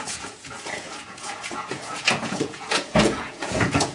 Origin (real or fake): fake